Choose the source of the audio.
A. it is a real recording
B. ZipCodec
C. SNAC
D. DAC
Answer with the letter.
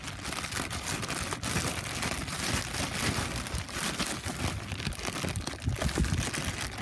A